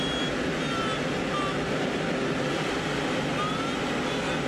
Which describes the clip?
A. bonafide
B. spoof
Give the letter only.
A